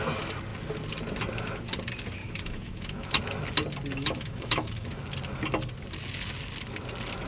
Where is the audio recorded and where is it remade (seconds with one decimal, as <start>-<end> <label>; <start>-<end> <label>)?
0.0-2.2 recorded; 2.2-3.2 remade; 3.2-4.0 recorded; 4.0-4.9 remade; 4.9-7.3 recorded